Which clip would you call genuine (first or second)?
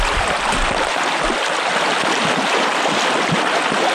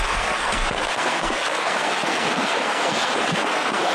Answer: first